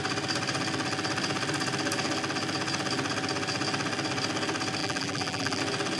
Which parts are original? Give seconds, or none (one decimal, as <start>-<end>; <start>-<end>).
0.0-4.8; 5.6-6.0